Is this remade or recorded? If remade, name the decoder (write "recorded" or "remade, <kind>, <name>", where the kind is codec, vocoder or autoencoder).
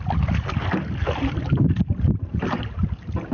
recorded